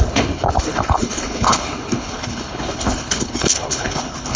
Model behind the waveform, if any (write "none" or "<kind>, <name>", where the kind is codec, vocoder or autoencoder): codec, HILCodec